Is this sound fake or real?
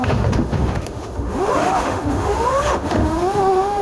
fake